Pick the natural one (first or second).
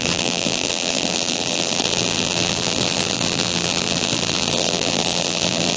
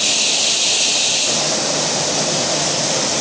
second